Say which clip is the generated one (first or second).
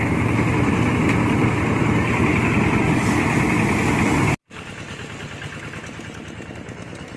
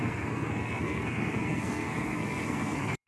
second